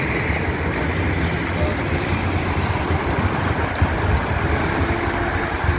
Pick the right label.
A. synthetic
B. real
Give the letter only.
B